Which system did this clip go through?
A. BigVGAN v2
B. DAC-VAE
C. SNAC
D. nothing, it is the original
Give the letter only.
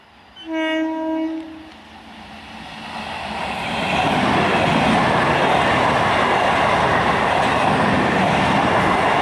D